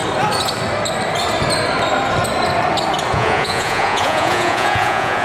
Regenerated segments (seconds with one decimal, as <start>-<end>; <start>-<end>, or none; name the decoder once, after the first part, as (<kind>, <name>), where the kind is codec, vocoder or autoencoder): 3.1-5.2 (vocoder, Vocos)